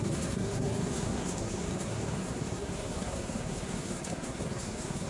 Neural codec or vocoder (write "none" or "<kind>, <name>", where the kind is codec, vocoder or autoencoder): codec, SNAC